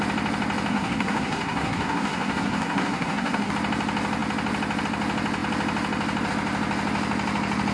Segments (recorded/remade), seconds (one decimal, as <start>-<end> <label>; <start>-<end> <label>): 0.0-0.7 recorded; 0.7-3.5 remade; 3.5-7.7 recorded